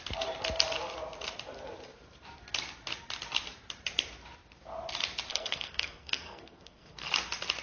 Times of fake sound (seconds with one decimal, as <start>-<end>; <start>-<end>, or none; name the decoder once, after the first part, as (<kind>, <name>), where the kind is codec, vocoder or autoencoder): 5.3-7.1 (codec, SNAC)